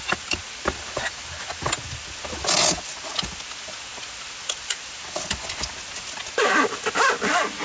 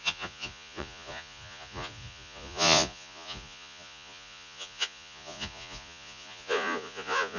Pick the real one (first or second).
first